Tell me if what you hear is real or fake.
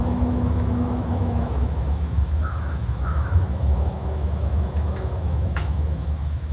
fake